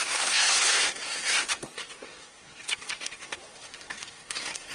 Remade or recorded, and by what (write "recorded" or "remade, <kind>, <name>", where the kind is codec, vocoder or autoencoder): remade, codec, SNAC